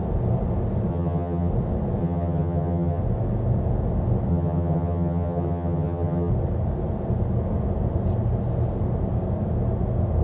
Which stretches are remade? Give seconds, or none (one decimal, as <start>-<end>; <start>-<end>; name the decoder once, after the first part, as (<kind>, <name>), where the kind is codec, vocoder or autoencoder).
0.9-1.5 (vocoder, HiFi-GAN); 2.0-3.0; 4.3-6.3